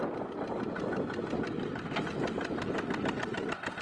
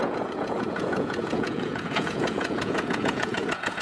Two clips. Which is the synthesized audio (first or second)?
second